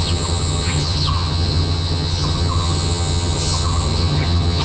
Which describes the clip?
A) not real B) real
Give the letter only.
A